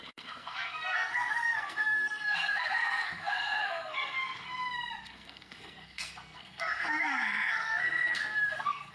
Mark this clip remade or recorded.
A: remade